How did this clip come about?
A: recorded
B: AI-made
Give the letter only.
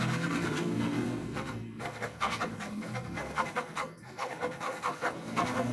B